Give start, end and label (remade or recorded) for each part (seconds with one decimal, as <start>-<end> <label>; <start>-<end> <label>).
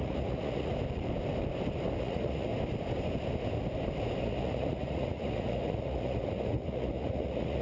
0.0-0.7 remade; 0.7-2.0 recorded; 2.0-2.5 remade; 2.5-4.2 recorded; 4.2-7.6 remade